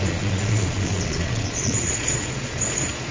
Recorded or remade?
remade